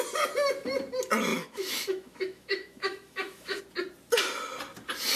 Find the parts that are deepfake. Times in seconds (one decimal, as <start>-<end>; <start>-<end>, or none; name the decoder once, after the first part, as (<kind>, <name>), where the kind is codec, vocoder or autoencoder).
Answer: 1.3-3.6 (autoencoder, DAC-VAE)